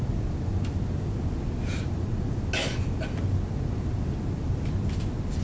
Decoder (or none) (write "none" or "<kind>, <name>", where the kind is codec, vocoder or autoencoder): none